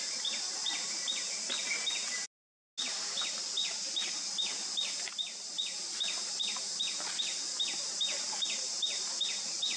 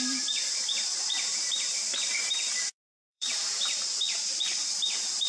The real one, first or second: first